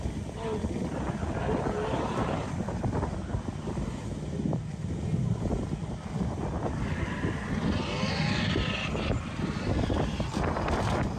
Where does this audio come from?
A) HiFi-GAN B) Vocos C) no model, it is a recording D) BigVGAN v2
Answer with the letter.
C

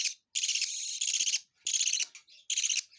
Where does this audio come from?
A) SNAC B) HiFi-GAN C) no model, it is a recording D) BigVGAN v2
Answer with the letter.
C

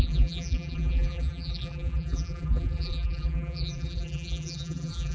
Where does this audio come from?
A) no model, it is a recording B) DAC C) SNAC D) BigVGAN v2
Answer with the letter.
D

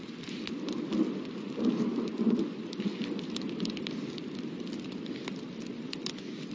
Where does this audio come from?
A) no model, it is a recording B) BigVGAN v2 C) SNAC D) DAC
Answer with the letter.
A